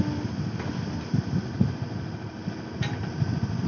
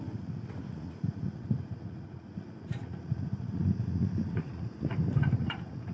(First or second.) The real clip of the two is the first